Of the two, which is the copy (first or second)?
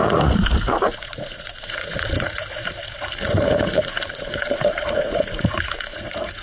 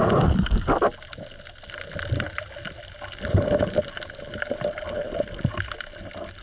first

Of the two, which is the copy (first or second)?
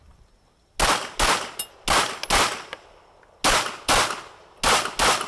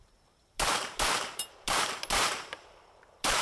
second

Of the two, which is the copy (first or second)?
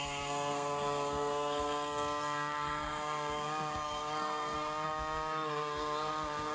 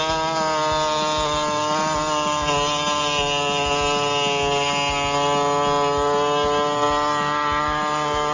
first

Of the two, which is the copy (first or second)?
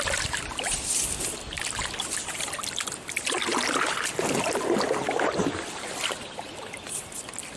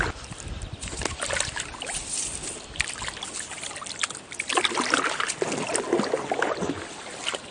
first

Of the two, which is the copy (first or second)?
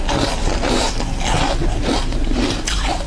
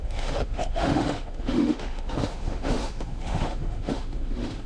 second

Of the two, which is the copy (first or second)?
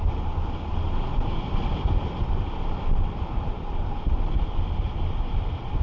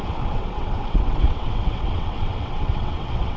second